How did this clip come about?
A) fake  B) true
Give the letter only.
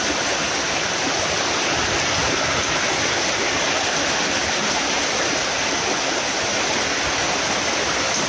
B